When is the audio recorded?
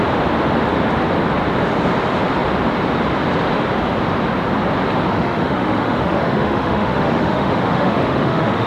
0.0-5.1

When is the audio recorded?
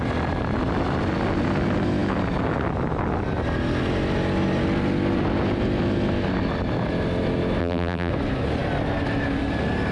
0.0-7.6; 8.1-9.9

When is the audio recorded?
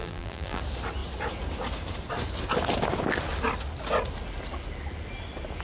0.6-5.6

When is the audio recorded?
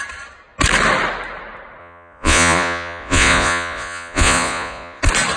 0.0-1.8; 5.0-5.4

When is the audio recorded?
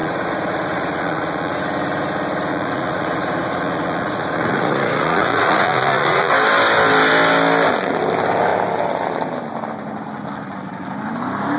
1.6-2.5; 6.3-11.6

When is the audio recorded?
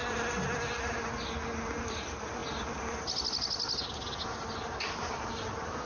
0.0-5.9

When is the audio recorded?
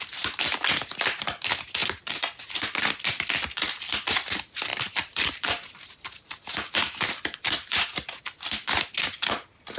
0.0-4.7; 8.2-9.8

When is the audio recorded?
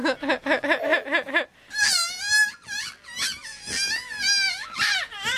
0.0-2.0; 4.8-5.4